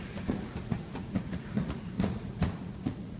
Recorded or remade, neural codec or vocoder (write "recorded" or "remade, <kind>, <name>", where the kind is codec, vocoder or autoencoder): remade, vocoder, Vocos